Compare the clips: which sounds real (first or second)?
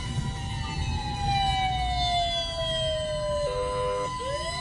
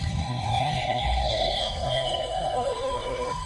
first